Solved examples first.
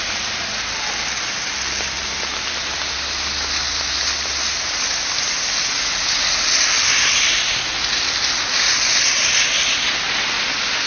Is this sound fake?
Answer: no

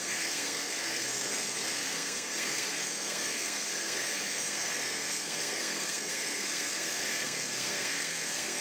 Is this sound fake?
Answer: yes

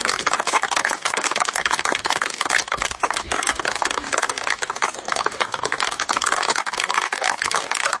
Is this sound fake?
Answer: yes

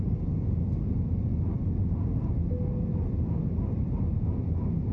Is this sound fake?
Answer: no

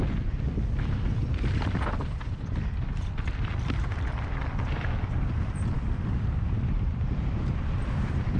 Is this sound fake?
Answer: yes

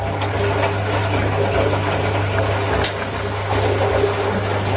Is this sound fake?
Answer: no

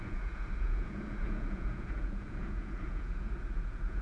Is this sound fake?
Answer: yes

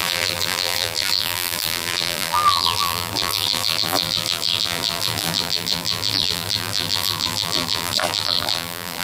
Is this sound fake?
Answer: yes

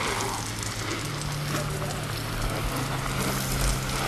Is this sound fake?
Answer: no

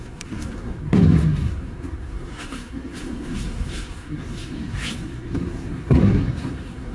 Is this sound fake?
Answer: yes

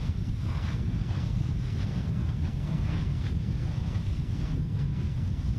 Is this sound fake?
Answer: yes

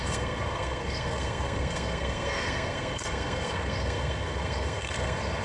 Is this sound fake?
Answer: yes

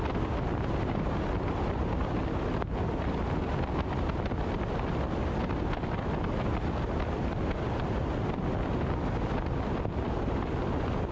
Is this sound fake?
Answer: no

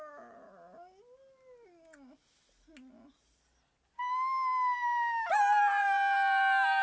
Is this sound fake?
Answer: no